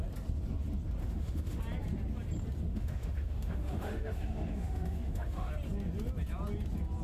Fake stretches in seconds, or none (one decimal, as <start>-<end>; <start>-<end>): 1.0-1.6; 2.7-5.5